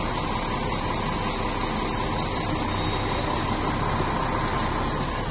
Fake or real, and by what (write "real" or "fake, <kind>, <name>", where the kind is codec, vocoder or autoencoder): real